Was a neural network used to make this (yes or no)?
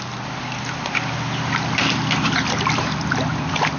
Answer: no